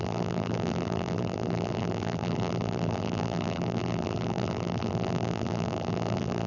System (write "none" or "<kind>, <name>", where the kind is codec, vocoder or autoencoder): vocoder, BigVGAN v2